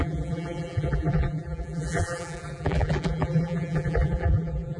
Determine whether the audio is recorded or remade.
remade